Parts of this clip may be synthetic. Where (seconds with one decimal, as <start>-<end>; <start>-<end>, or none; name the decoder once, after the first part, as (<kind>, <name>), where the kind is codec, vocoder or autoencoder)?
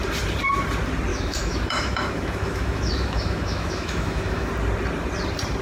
1.1-4.5 (autoencoder, DAC-VAE)